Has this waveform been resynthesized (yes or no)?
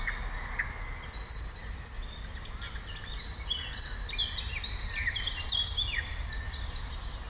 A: no